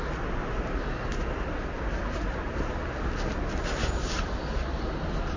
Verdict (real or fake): real